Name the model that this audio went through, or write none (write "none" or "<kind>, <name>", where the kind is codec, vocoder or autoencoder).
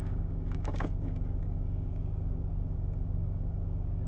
codec, DAC